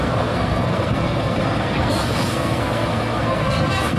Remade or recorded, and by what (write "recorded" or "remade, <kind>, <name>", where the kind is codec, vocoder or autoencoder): remade, codec, SNAC